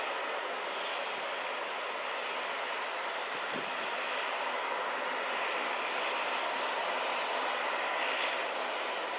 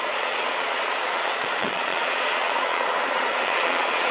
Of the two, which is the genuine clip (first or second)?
first